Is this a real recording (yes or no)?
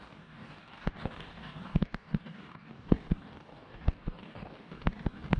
no